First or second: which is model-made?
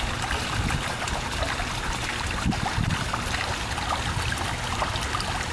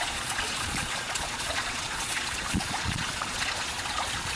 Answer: second